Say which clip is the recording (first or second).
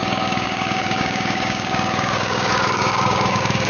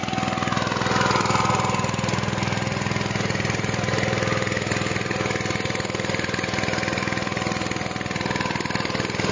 second